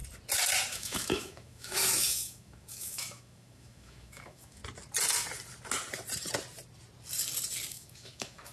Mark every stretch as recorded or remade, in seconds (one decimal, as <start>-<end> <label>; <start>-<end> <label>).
0.0-0.7 recorded; 0.7-4.6 remade; 4.6-7.7 recorded; 7.7-8.5 remade